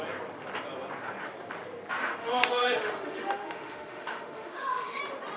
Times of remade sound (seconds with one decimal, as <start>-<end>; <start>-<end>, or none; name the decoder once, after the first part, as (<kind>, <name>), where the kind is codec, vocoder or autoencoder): 2.2-5.0 (autoencoder, DAC-VAE)